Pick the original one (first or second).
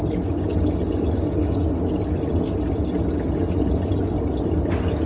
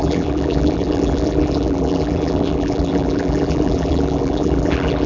first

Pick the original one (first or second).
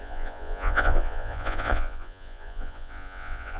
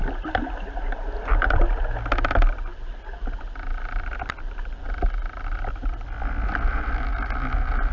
second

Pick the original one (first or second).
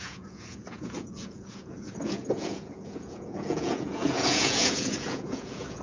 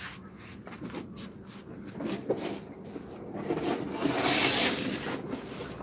second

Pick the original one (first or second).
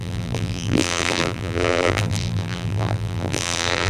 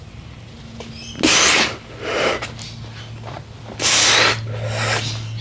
second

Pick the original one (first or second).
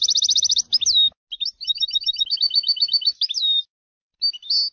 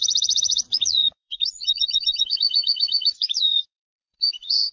first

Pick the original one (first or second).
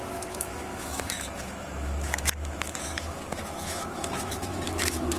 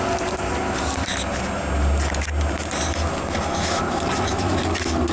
second